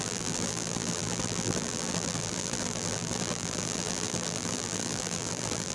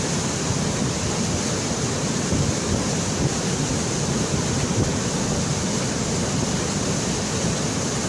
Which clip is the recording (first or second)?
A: second